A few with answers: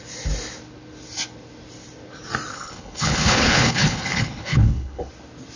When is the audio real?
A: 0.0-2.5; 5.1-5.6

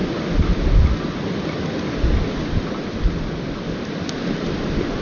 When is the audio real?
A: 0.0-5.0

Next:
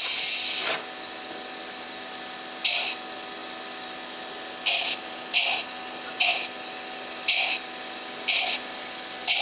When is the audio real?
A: 0.0-9.4